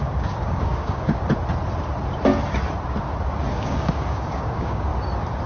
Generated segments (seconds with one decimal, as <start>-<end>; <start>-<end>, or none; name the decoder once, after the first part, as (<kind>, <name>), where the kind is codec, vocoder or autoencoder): 0.0-1.2 (codec, DAC); 3.5-4.9